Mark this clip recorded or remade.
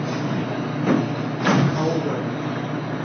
recorded